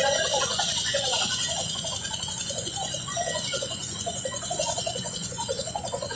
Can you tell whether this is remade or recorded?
remade